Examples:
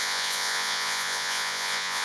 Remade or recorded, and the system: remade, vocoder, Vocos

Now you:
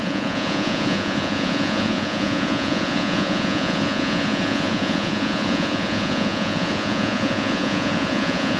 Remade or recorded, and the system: remade, vocoder, Vocos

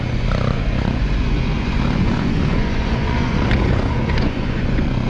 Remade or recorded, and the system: remade, vocoder, Vocos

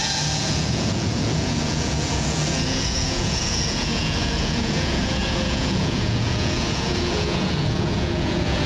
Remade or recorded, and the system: remade, vocoder, Vocos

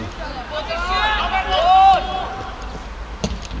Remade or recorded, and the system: recorded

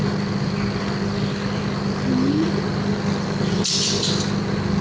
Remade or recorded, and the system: recorded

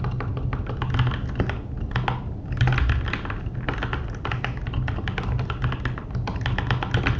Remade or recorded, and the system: recorded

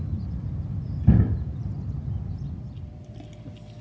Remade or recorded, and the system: recorded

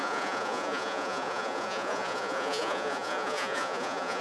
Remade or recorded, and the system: remade, vocoder, Vocos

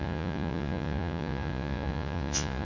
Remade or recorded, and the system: remade, vocoder, Vocos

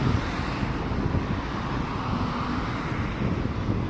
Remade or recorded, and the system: recorded